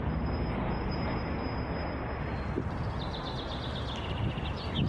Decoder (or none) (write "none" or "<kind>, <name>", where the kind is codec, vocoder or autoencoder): none